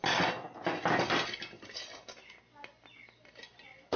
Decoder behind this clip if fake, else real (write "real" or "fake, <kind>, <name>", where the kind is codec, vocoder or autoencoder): real